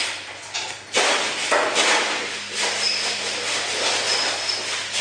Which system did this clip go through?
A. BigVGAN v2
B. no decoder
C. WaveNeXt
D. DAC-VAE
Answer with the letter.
B